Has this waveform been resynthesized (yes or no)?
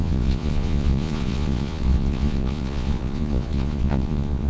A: yes